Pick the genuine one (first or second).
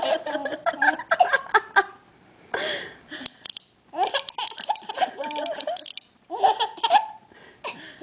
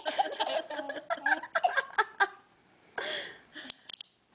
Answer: second